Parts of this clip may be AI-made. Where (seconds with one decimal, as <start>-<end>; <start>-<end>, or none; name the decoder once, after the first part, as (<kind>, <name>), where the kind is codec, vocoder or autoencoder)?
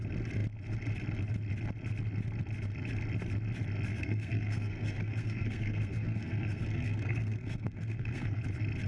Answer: 3.9-8.4 (codec, SNAC)